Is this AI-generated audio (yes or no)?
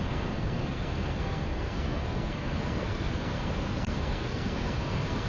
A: yes